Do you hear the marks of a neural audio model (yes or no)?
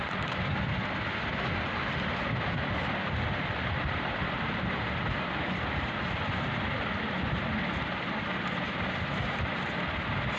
no